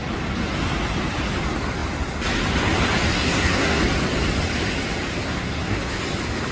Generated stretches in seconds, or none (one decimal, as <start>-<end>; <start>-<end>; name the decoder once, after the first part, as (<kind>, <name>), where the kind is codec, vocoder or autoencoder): 3.1-3.8 (codec, SNAC); 5.2-6.0